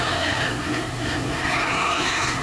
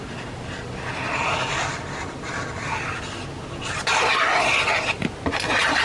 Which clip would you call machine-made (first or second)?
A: first